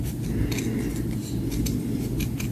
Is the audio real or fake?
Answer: real